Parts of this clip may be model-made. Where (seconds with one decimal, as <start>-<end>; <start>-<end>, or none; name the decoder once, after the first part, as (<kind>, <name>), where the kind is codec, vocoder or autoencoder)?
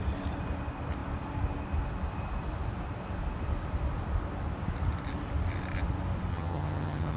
6.3-7.2 (vocoder, HiFi-GAN)